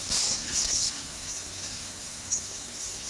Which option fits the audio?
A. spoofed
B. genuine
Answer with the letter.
A